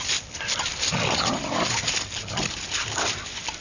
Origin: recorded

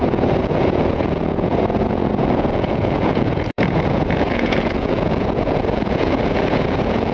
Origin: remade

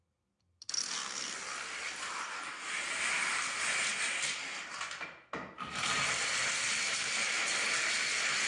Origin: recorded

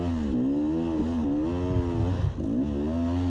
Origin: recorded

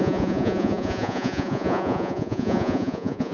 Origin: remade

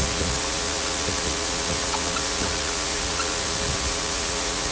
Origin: remade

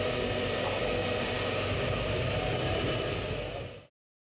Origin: recorded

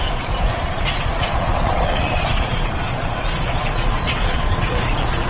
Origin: remade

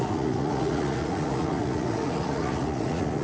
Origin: remade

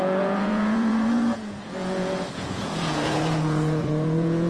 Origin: remade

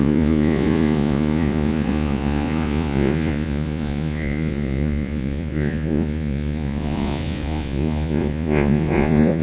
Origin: remade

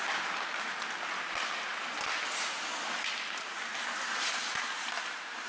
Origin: recorded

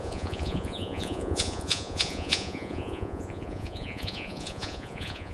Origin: remade